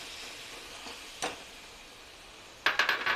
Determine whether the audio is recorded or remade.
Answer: recorded